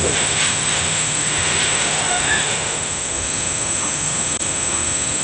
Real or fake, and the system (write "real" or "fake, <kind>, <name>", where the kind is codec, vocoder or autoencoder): fake, autoencoder, DAC-VAE